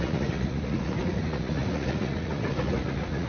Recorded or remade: remade